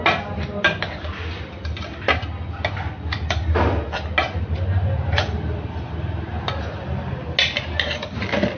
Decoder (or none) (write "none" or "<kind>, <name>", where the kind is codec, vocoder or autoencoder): none